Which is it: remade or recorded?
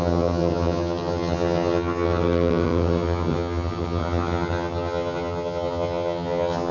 remade